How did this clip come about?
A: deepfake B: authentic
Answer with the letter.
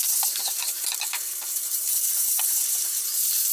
A